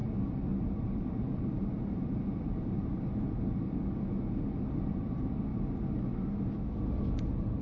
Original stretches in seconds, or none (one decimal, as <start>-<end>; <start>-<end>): 3.3-7.6